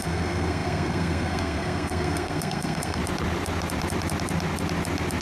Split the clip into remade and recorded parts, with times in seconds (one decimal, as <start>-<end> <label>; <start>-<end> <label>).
0.0-3.0 remade; 3.0-5.2 recorded